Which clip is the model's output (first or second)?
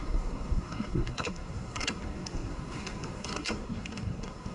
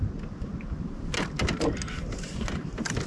first